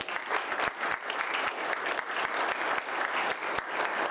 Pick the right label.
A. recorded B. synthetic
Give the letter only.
A